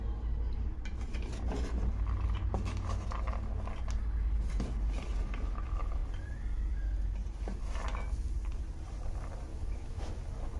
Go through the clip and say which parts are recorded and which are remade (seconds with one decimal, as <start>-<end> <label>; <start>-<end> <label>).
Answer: 0.0-9.5 recorded; 9.5-10.1 remade; 10.1-10.6 recorded